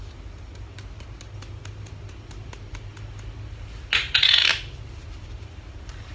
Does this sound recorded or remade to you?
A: recorded